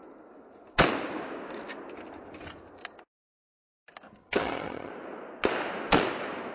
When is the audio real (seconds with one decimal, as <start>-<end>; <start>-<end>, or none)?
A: 0.0-4.2; 4.9-6.5